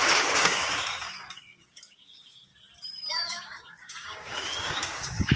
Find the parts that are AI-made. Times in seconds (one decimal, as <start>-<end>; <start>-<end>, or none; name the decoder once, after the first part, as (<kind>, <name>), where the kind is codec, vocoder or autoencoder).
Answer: 0.0-2.5 (codec, DAC); 3.1-5.4